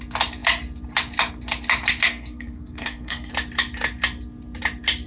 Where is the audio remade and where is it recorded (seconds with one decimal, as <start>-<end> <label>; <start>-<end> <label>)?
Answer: 0.0-2.1 recorded; 2.1-3.3 remade; 3.3-5.1 recorded